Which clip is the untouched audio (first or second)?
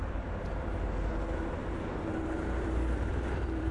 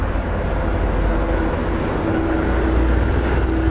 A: second